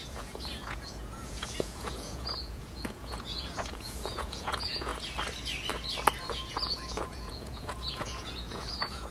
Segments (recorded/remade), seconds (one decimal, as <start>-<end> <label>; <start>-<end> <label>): 0.0-4.9 remade; 4.9-6.3 recorded; 6.3-9.1 remade